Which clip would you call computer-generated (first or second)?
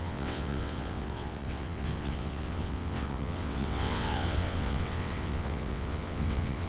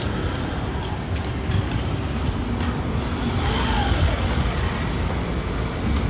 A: first